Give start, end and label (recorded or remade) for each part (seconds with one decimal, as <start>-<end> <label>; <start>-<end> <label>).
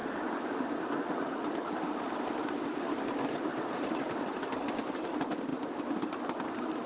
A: 0.0-6.9 recorded